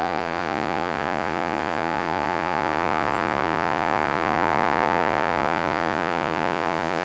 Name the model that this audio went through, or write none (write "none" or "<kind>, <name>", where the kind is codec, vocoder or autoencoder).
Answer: vocoder, Vocos